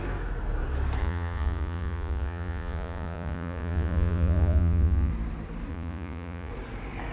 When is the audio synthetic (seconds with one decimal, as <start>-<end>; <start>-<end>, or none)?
1.0-5.1; 5.7-6.5